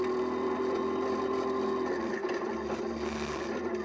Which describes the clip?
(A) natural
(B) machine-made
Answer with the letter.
A